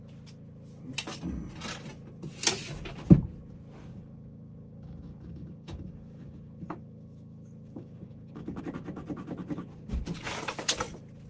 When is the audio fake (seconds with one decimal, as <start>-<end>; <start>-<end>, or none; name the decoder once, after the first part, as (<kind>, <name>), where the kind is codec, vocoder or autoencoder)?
3.9-8.6 (codec, DAC)